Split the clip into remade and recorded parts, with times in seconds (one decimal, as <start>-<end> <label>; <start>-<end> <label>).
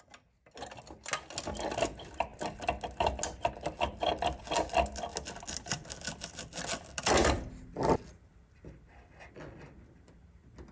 0.0-10.7 recorded